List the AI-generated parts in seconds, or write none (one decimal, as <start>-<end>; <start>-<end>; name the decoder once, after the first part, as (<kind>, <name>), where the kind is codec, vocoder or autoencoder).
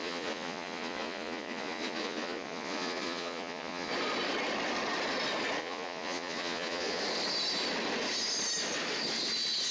0.0-3.9 (vocoder, Vocos); 5.6-7.0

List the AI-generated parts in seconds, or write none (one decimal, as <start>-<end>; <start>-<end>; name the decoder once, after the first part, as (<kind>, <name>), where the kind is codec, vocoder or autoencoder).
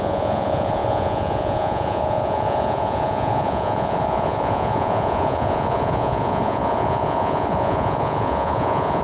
0.0-9.0 (vocoder, Vocos)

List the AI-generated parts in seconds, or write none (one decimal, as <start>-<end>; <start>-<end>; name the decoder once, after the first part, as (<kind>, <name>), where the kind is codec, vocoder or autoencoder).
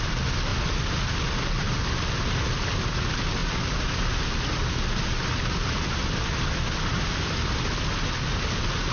none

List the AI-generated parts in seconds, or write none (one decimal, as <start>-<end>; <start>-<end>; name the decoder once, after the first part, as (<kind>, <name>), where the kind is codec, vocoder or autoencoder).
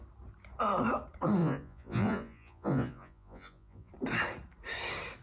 1.4-3.9 (vocoder, Vocos)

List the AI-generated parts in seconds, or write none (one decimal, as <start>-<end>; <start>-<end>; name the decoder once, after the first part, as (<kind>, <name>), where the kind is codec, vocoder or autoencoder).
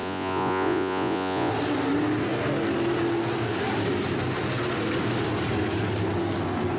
0.0-1.5 (vocoder, Vocos)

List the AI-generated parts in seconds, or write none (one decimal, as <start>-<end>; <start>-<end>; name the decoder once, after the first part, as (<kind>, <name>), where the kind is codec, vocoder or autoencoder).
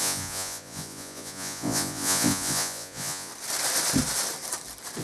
0.0-3.3 (vocoder, Vocos)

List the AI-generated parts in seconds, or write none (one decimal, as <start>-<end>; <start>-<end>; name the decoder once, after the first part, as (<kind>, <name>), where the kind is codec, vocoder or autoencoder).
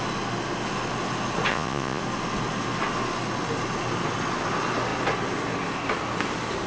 1.5-2.0 (vocoder, Vocos)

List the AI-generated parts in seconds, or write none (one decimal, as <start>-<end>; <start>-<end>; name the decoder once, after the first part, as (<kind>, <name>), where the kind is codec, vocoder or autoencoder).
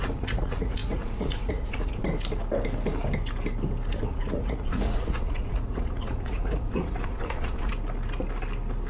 0.0-2.1 (vocoder, Vocos); 3.9-7.7